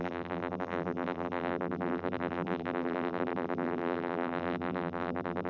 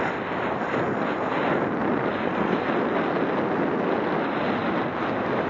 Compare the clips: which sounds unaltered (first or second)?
second